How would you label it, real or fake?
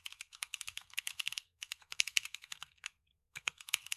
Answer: fake